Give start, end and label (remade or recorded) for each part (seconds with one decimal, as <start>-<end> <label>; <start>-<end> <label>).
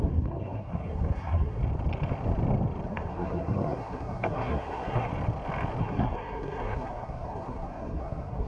0.0-1.6 remade; 1.6-2.9 recorded; 2.9-5.1 remade; 5.1-5.8 recorded; 5.8-8.5 remade